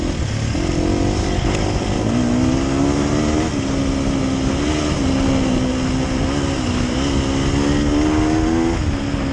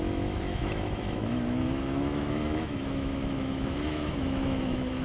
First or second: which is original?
first